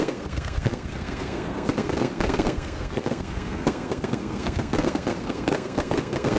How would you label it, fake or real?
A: fake